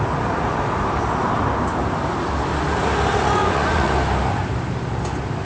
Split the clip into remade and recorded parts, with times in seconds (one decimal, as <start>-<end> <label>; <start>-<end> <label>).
0.0-3.4 recorded; 3.4-3.9 remade; 3.9-5.4 recorded